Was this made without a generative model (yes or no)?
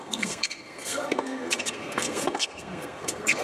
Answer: no